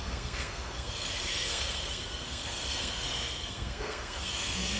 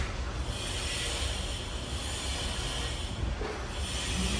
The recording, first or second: second